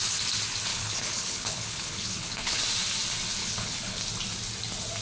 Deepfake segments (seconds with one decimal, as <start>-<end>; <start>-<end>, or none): 0.7-2.6; 3.4-4.0